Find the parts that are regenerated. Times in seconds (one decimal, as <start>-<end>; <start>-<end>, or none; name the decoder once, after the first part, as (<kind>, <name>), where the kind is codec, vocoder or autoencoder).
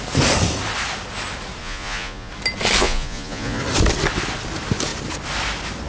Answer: 1.6-2.3 (vocoder, Vocos); 2.8-3.6